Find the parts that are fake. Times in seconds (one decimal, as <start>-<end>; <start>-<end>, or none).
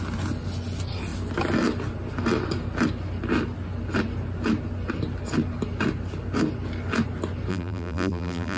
7.5-8.6